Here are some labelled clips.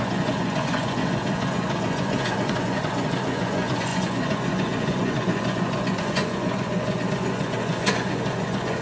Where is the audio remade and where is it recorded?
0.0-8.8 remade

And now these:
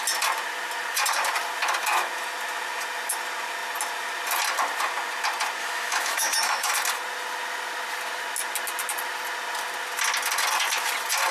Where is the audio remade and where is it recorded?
0.0-5.6 recorded; 5.6-6.7 remade; 6.7-11.3 recorded

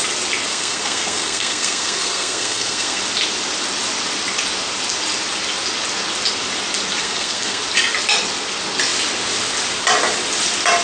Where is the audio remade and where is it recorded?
0.0-0.5 recorded; 0.5-3.0 remade; 3.0-7.0 recorded; 7.0-7.6 remade; 7.6-10.8 recorded

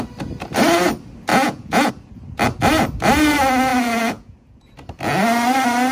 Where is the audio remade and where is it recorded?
0.0-1.3 recorded; 1.3-1.9 remade; 1.9-3.7 recorded; 3.7-4.6 remade; 4.6-5.9 recorded

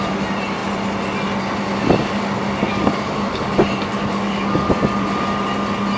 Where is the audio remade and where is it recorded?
0.0-2.0 recorded; 2.0-4.7 remade; 4.7-6.0 recorded

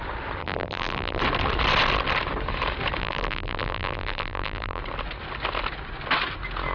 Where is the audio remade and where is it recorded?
0.0-0.4 recorded; 0.4-1.2 remade; 1.2-3.0 recorded; 3.0-4.8 remade; 4.8-6.7 recorded

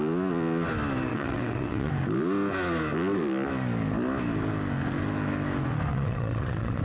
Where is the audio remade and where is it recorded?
0.0-1.1 recorded; 1.1-1.9 remade; 1.9-5.9 recorded; 5.9-6.8 remade

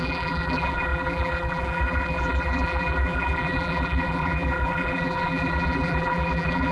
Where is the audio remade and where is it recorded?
0.0-6.7 remade